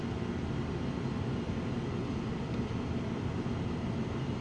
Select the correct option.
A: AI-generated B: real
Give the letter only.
B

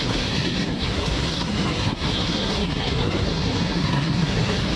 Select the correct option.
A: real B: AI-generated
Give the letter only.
B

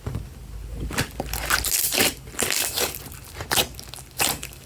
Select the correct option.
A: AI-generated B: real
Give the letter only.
B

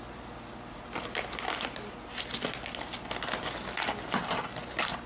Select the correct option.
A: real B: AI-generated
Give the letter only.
A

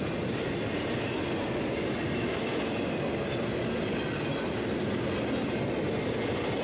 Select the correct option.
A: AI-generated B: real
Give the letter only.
B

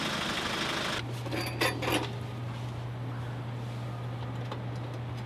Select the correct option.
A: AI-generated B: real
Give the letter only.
B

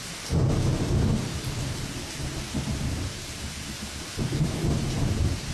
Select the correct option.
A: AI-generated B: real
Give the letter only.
B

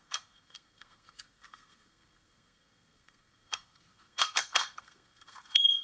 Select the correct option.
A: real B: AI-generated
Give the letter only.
B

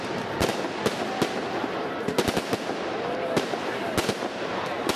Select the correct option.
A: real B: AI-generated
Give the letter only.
A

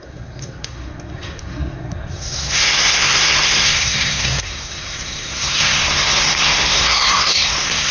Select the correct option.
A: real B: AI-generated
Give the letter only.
B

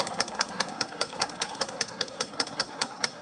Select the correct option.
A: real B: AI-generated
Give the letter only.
B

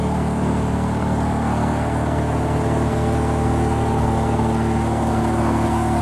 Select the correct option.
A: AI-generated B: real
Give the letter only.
A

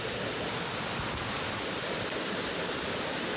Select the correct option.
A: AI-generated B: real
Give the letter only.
B